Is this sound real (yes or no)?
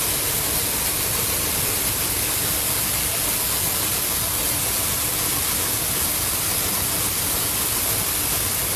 yes